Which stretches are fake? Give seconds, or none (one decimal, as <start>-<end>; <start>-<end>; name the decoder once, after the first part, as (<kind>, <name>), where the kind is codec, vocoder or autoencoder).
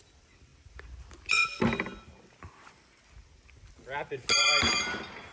none